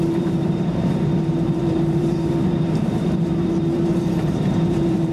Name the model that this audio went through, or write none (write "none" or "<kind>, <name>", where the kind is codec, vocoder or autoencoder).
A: vocoder, BigVGAN v2